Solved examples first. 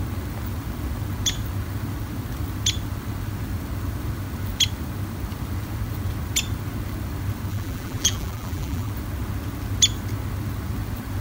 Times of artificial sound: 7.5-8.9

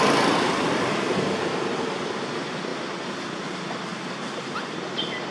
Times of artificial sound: 1.5-2.0

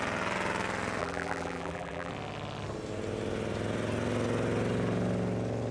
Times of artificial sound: 1.0-2.1

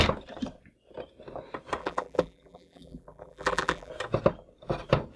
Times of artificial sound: 1.8-3.9

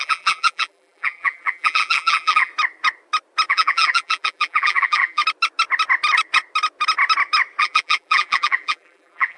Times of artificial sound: 0.0-2.5; 3.5-5.2; 7.6-9.4